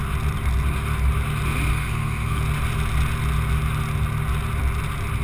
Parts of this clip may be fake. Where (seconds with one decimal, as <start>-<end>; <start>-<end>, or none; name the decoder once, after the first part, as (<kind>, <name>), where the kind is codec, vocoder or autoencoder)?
1.7-2.4 (codec, SNAC)